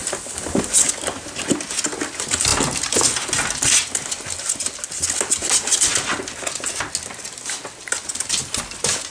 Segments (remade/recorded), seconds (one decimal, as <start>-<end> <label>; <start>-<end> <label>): 0.0-9.1 recorded